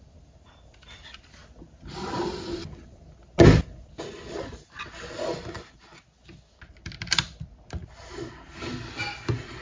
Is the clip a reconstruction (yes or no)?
no